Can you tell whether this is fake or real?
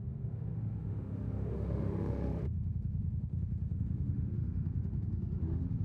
fake